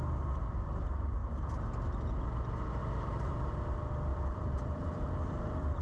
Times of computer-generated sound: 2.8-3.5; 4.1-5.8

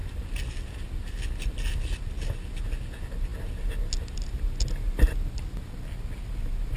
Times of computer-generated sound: none

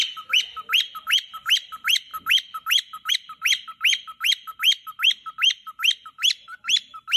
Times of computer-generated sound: 2.1-3.1

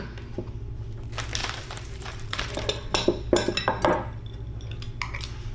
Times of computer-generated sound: 1.4-2.4

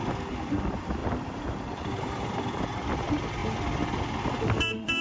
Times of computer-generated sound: 0.0-3.4; 4.6-5.0

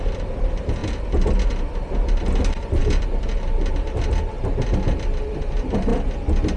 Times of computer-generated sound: none

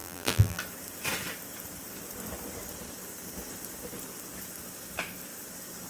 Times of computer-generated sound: 0.0-0.6

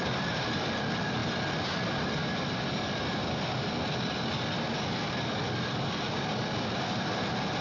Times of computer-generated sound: none